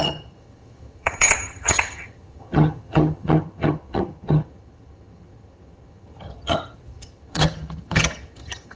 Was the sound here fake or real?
fake